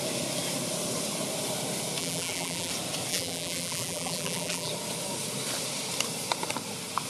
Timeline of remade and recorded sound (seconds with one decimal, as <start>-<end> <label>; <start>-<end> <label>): 0.0-2.0 recorded; 2.0-2.7 remade; 2.7-3.1 recorded; 3.1-4.7 remade; 4.7-7.1 recorded

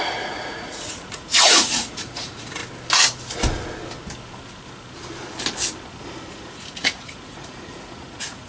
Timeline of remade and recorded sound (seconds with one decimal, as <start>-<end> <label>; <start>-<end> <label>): 0.0-2.6 remade; 2.6-6.3 recorded; 6.3-8.5 remade